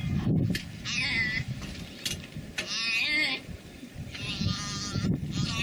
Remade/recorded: recorded